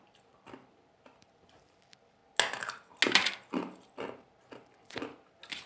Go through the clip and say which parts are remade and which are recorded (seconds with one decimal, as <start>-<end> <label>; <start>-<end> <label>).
0.0-2.2 remade; 2.2-5.7 recorded